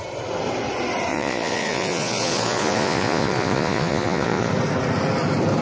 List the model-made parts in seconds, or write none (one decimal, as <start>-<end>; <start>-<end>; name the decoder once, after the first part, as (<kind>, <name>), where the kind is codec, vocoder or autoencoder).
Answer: 1.1-4.5 (vocoder, Vocos)

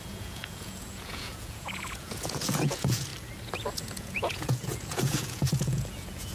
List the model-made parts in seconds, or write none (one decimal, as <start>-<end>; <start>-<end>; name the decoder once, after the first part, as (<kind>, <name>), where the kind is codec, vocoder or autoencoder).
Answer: 0.0-3.1 (vocoder, Vocos); 3.7-6.3

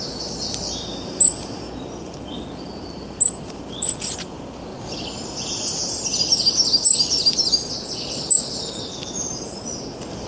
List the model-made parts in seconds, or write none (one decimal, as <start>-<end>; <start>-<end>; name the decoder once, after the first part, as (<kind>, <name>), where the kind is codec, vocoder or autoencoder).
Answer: none

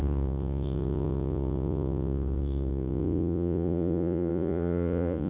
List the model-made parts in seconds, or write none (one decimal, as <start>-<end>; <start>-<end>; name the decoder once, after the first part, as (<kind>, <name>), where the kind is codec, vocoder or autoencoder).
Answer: 0.0-5.3 (vocoder, Vocos)

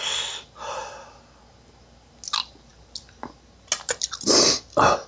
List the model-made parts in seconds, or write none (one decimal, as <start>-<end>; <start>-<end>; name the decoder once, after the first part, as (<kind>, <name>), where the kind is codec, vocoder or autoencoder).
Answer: none

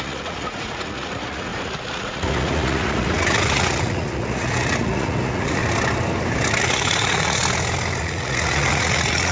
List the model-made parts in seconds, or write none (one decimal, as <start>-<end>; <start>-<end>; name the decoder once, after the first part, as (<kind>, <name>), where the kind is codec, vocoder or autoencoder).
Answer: 0.0-5.6 (vocoder, Vocos); 6.6-7.4; 8.0-9.3

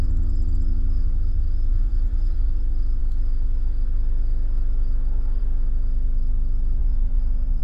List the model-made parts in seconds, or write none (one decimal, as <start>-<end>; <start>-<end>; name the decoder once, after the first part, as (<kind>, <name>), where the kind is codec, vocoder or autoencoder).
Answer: 1.7-2.5 (vocoder, Vocos); 6.8-7.6